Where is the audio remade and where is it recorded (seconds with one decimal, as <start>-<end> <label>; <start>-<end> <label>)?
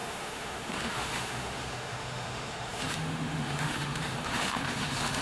0.0-5.2 remade